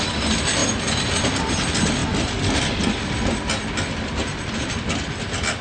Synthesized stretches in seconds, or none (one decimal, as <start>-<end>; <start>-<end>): none